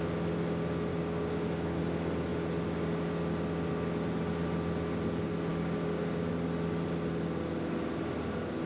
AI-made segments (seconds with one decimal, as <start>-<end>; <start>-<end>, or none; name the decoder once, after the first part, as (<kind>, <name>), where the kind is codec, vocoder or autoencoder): 0.9-1.8 (codec, DAC); 5.5-6.3